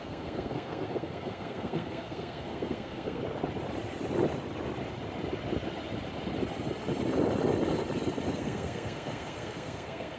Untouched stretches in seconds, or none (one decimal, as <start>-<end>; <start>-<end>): 3.2-8.3